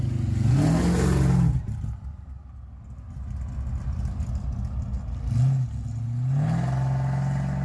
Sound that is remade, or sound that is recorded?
recorded